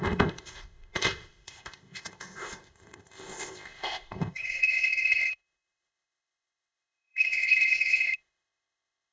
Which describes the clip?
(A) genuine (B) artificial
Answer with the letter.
B